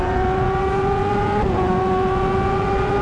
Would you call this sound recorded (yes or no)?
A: no